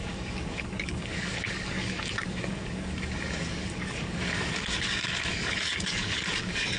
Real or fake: fake